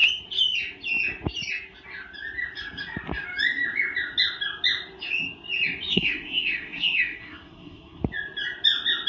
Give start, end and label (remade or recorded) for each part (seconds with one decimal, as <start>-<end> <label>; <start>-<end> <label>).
0.0-5.9 recorded; 5.9-8.0 remade; 8.0-9.1 recorded